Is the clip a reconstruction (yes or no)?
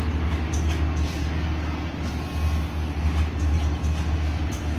no